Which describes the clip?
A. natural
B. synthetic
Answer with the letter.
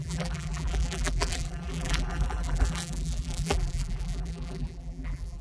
B